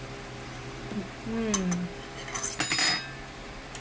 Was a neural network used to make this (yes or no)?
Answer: no